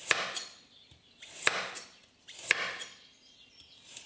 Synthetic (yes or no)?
no